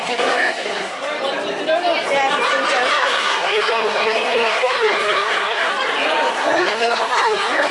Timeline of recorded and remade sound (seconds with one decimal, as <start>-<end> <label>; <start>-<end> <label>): 0.0-1.1 remade; 1.1-2.9 recorded; 2.9-5.7 remade; 5.7-6.3 recorded; 6.3-7.7 remade